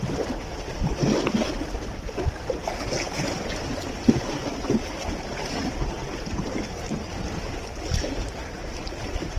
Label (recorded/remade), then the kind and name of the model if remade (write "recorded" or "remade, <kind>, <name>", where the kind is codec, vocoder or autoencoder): recorded